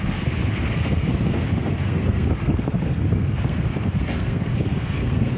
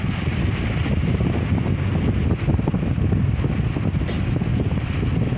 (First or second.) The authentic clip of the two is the second